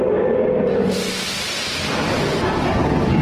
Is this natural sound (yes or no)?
yes